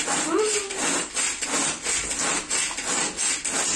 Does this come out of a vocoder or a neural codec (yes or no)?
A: no